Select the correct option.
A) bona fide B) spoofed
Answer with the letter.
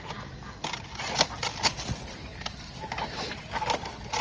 A